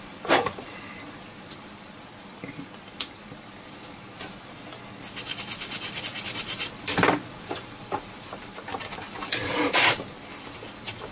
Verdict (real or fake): fake